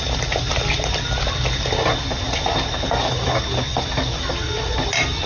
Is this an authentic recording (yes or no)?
yes